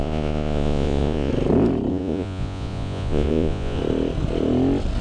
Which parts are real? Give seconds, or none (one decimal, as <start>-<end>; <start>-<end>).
1.3-1.9; 3.8-5.0